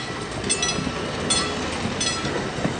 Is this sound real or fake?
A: real